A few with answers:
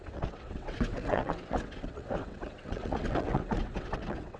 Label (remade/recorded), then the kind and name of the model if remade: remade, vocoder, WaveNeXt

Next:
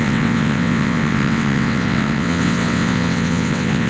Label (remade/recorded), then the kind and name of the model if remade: remade, vocoder, WaveNeXt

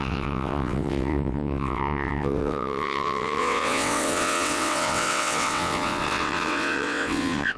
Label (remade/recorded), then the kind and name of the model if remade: remade, vocoder, WaveNeXt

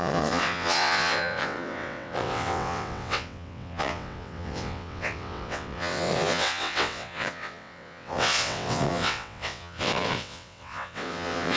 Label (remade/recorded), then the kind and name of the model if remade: remade, vocoder, WaveNeXt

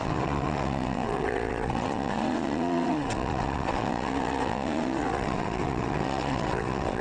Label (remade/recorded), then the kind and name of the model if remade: remade, vocoder, WaveNeXt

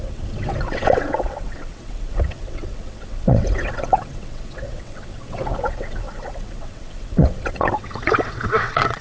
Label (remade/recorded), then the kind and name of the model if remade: remade, vocoder, WaveNeXt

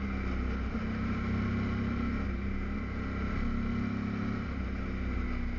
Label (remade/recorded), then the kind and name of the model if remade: recorded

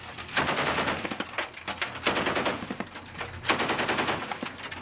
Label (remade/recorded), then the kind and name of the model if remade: recorded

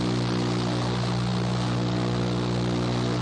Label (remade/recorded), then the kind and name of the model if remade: recorded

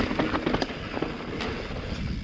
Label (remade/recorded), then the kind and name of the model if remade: recorded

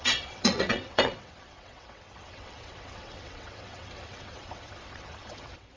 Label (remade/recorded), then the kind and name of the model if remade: remade, vocoder, WaveNeXt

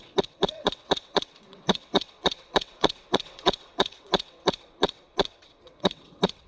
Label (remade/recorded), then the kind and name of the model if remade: remade, vocoder, WaveNeXt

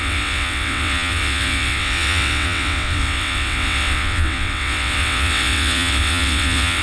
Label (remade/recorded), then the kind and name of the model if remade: remade, vocoder, WaveNeXt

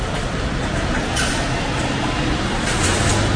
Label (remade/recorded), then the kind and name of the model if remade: recorded